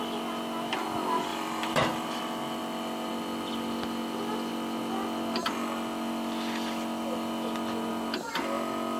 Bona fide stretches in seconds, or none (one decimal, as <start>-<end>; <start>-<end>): 0.0-1.3; 2.2-9.0